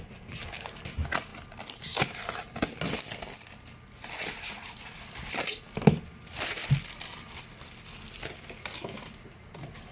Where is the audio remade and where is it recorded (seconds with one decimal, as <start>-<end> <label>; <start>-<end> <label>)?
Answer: 0.0-9.9 recorded